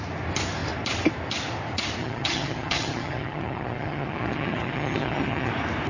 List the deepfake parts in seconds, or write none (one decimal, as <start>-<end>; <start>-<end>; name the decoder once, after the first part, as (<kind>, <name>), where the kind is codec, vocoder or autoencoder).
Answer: 2.0-5.5 (vocoder, HiFi-GAN)